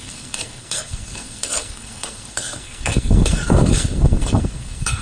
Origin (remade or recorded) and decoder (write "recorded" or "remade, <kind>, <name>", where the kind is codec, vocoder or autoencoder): remade, codec, SNAC